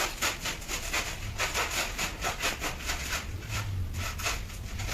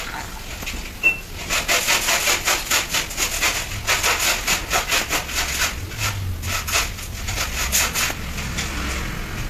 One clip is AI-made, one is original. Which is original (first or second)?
second